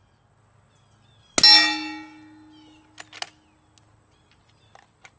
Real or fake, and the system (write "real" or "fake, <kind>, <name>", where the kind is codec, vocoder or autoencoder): real